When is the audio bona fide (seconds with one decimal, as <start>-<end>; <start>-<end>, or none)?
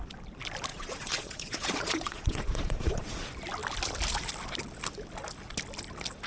0.0-0.7; 3.2-6.3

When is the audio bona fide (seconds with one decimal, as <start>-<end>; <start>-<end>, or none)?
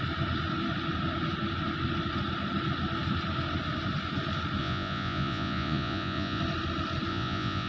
0.0-4.6; 6.4-7.1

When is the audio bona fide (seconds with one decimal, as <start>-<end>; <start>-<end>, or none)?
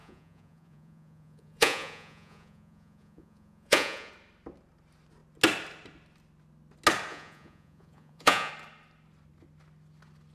4.1-7.1; 8.5-10.3